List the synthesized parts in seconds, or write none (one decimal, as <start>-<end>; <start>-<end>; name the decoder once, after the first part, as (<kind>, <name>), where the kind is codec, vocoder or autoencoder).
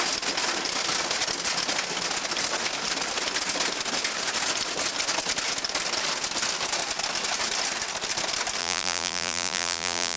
8.6-10.2 (vocoder, BigVGAN v2)